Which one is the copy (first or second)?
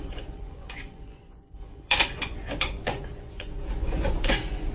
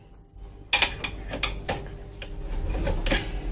first